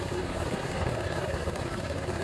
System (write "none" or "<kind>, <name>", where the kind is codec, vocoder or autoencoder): codec, SNAC